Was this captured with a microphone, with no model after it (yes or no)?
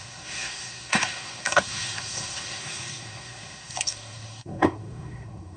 no